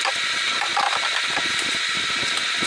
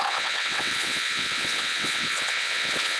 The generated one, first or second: second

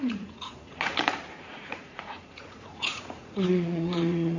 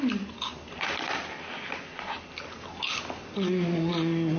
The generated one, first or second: first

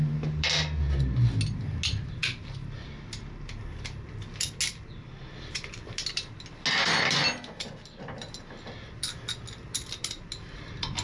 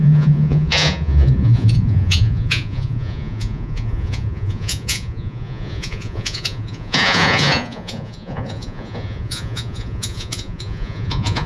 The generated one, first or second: second